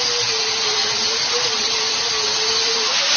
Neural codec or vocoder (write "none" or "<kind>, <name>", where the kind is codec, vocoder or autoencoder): vocoder, BigVGAN v2